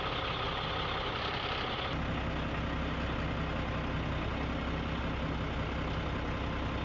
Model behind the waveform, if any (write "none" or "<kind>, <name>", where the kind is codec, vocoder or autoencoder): none